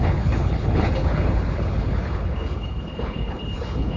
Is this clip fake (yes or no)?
yes